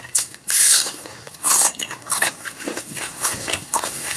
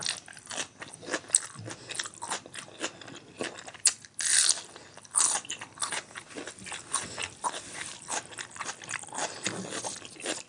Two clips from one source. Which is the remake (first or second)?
first